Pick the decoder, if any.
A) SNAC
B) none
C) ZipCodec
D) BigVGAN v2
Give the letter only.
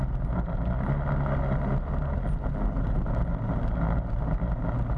B